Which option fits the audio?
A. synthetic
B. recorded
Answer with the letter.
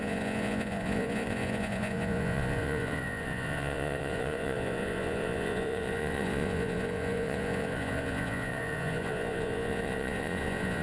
A